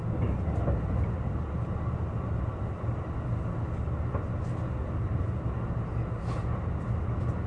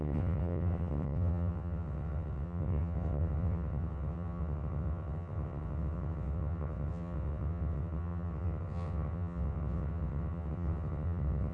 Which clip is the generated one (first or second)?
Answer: second